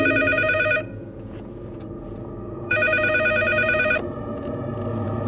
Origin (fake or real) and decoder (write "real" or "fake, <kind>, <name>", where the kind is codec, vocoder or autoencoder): fake, vocoder, Vocos